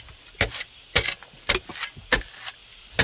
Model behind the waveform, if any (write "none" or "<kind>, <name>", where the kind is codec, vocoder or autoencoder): none